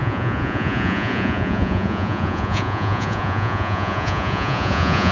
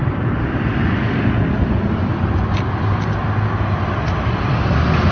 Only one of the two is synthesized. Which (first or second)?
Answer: first